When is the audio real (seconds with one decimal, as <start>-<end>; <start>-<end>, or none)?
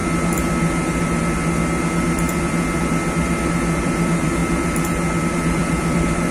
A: 0.0-3.8; 4.4-5.3